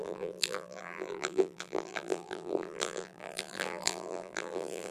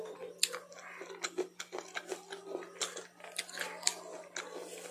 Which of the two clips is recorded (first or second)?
second